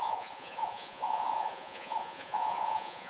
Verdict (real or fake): fake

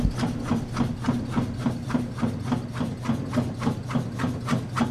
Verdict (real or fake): real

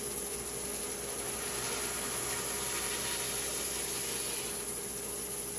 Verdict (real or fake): real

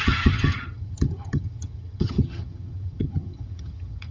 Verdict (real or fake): fake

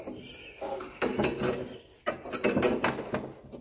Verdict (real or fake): real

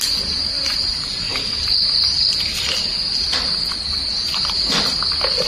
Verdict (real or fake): real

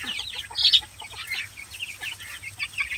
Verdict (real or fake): real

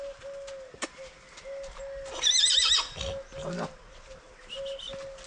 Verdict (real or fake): real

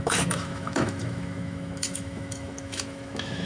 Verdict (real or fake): fake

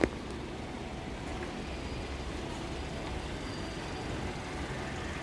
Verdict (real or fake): real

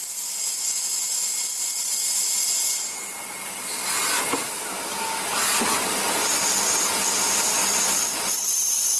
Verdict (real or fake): real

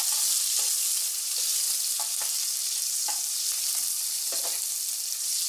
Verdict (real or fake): real